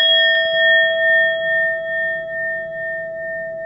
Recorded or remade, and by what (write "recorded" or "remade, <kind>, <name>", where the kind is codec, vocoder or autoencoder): recorded